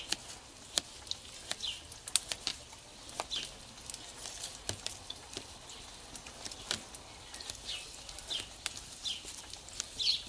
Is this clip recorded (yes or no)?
yes